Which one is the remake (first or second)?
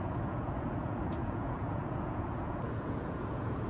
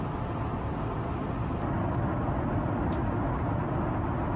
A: first